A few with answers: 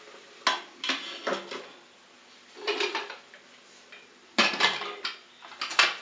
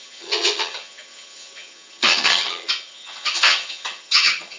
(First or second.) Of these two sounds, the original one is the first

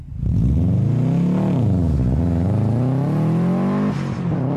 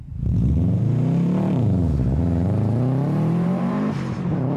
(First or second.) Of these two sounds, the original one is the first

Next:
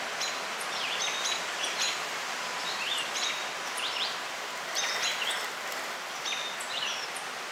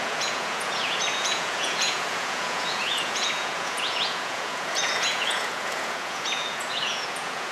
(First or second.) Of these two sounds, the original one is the first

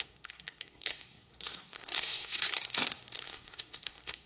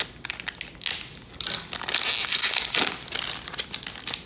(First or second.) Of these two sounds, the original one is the second